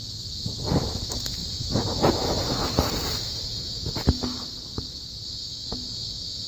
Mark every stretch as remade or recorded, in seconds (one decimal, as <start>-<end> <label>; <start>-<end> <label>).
0.0-6.5 remade